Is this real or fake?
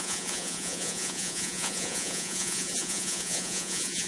fake